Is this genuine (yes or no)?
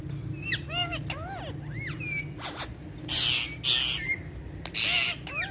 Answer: yes